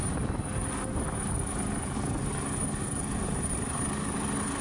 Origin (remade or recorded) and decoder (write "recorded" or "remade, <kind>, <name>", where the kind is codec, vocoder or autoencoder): recorded